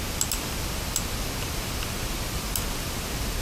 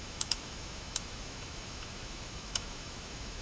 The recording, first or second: first